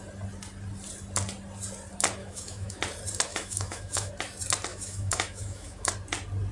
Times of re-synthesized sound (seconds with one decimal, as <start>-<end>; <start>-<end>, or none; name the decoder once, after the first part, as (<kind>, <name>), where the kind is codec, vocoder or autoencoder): 2.2-2.8 (autoencoder, DAC-VAE); 3.3-4.1; 4.7-5.9